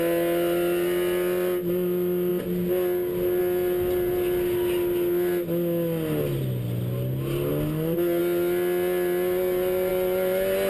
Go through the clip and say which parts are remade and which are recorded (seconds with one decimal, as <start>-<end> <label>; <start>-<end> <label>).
0.0-10.7 recorded